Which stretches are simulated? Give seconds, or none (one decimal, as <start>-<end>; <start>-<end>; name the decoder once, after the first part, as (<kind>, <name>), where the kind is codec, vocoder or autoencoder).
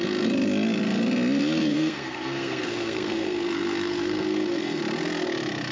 1.7-4.8 (codec, SNAC)